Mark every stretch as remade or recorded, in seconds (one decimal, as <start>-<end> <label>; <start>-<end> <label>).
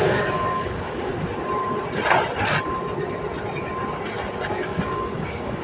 0.0-1.1 remade; 1.1-4.5 recorded; 4.5-5.6 remade